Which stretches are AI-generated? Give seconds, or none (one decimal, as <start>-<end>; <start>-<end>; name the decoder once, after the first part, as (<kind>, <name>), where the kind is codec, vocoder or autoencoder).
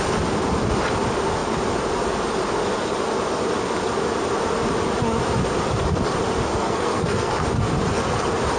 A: 6.5-7.3 (codec, SNAC)